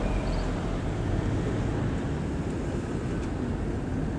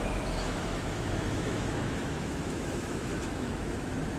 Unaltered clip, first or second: first